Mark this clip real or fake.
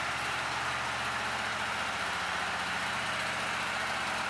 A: real